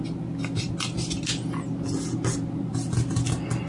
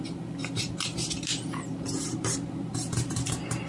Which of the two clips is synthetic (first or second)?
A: second